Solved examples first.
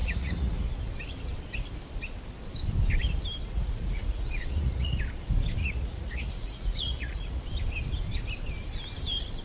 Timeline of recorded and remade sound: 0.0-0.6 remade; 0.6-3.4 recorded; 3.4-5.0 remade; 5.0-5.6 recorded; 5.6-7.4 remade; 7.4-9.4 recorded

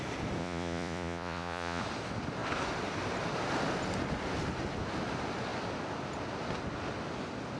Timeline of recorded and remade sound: 0.0-0.4 recorded; 0.4-1.8 remade; 1.8-7.6 recorded

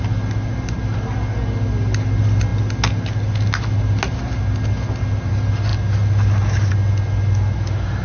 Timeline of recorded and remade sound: 0.0-8.0 recorded